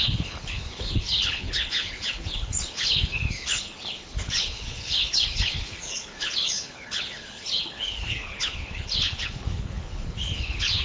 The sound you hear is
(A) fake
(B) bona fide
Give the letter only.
A